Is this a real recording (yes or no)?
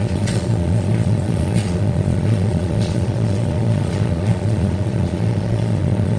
no